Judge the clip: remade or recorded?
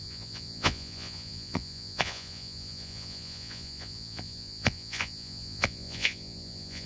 remade